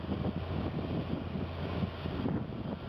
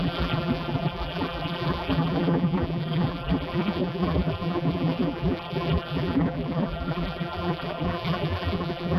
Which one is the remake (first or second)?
second